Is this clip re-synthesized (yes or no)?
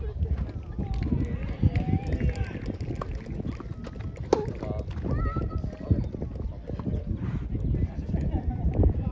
no